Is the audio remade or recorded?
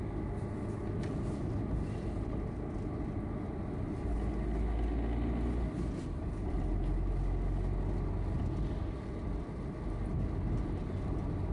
recorded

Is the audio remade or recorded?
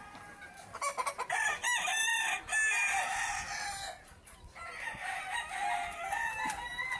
recorded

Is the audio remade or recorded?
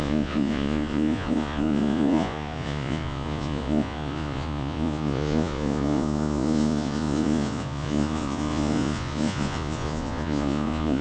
remade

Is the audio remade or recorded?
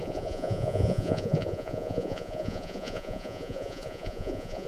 remade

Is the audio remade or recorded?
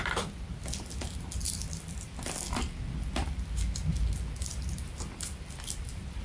recorded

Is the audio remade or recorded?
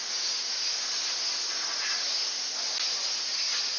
recorded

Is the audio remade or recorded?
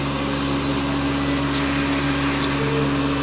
recorded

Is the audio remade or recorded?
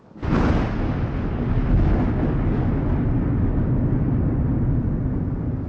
recorded